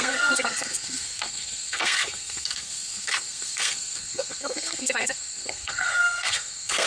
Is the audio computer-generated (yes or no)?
yes